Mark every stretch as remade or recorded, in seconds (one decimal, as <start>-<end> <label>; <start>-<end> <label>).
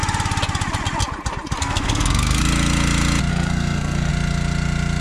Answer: 0.0-1.6 recorded; 1.6-2.4 remade; 2.4-3.3 recorded; 3.3-4.1 remade; 4.1-5.0 recorded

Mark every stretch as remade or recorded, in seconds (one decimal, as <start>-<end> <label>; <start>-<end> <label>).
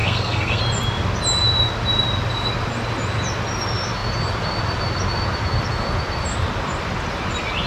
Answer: 0.0-0.6 remade; 0.6-7.7 recorded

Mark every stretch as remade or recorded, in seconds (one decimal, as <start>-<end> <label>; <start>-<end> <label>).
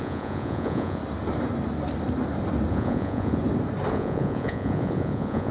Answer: 0.0-1.0 remade; 1.0-2.7 recorded; 2.7-3.4 remade; 3.4-3.9 recorded; 3.9-5.5 remade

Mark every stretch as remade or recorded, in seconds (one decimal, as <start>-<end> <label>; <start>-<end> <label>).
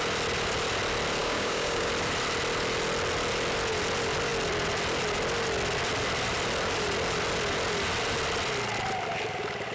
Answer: 0.0-1.2 recorded; 1.2-1.9 remade; 1.9-9.7 recorded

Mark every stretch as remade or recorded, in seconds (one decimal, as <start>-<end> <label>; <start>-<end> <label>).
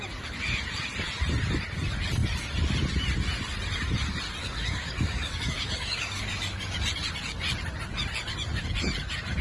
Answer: 0.0-4.4 recorded; 4.4-6.7 remade; 6.7-9.4 recorded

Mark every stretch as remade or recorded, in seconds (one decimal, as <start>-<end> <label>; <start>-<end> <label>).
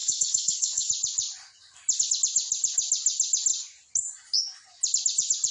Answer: 0.0-0.9 remade; 0.9-5.5 recorded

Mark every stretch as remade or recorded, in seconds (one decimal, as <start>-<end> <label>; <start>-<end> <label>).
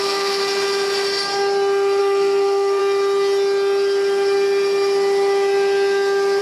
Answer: 0.0-0.4 remade; 0.4-2.0 recorded; 2.0-2.8 remade; 2.8-6.4 recorded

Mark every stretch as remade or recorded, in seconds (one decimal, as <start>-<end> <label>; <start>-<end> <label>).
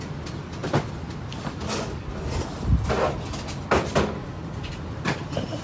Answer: 0.0-4.2 recorded; 4.2-4.8 remade; 4.8-5.6 recorded